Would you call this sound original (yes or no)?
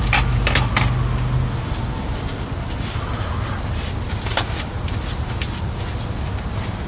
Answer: yes